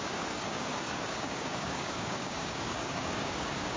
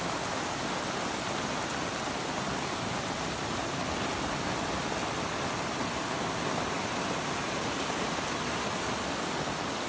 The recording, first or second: second